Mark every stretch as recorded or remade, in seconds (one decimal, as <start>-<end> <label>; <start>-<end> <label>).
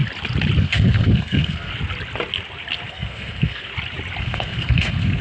0.0-0.6 recorded; 0.6-1.7 remade; 1.7-2.9 recorded; 2.9-3.7 remade; 3.7-4.2 recorded; 4.2-5.2 remade